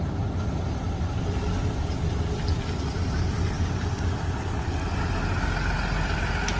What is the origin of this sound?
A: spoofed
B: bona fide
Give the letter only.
B